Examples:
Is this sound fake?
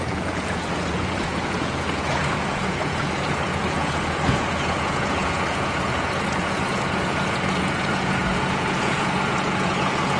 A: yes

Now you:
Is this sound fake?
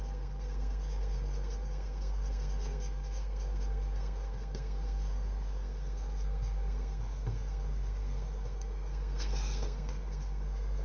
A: yes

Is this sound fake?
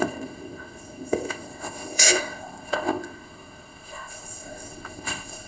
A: yes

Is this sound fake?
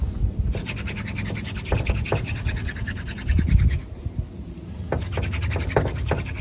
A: no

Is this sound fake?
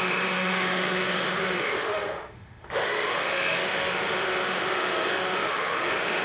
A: yes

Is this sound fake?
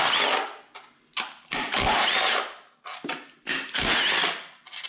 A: no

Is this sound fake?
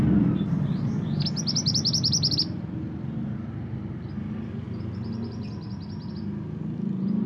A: no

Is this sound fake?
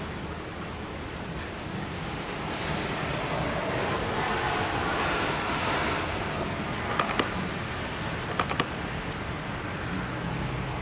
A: no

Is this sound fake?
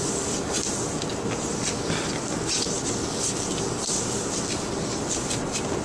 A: no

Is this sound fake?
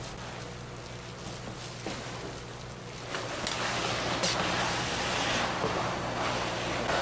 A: no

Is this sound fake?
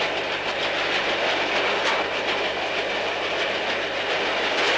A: no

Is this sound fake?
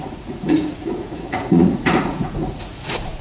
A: yes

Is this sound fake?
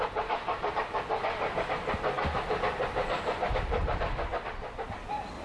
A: no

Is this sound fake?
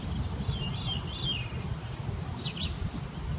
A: no